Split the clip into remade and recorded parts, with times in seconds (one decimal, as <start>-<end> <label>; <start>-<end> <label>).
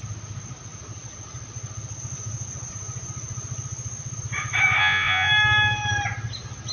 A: 0.0-4.8 recorded; 4.8-5.3 remade; 5.3-6.7 recorded